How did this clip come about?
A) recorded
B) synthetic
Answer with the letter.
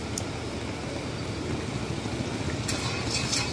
A